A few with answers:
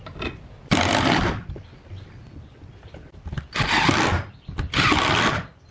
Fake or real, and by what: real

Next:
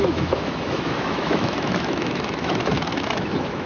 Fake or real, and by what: fake, autoencoder, DAC-VAE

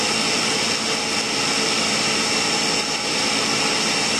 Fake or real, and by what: real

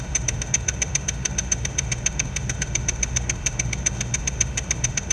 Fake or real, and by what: fake, autoencoder, DAC-VAE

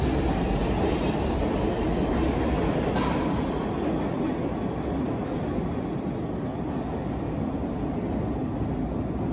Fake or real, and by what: real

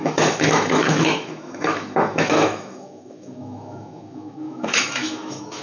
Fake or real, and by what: fake, autoencoder, DAC-VAE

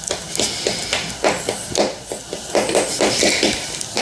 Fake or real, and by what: real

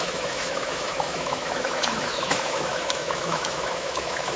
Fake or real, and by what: fake, autoencoder, DAC-VAE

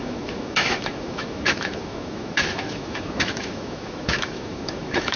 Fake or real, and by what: fake, autoencoder, DAC-VAE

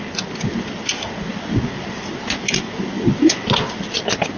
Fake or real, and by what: real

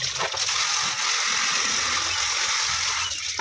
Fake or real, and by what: real